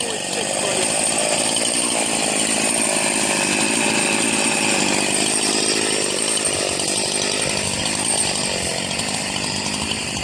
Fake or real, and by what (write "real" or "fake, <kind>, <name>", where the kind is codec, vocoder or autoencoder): real